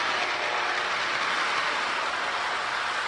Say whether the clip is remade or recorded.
recorded